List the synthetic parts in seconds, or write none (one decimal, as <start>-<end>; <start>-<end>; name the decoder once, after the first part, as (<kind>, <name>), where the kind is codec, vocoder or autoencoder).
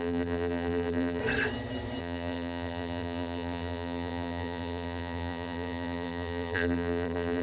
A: 0.0-1.2 (vocoder, BigVGAN v2); 2.0-7.4